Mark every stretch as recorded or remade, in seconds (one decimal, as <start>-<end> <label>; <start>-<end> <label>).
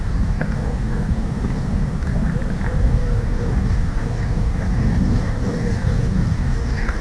0.0-2.3 remade; 2.3-2.8 recorded; 2.8-7.0 remade